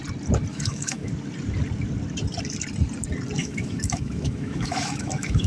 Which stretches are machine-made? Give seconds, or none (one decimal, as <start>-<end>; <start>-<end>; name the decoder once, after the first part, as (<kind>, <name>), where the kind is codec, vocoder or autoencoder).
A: 0.5-1.1 (autoencoder, DAC-VAE); 3.4-5.5